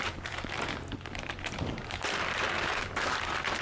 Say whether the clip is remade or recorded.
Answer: remade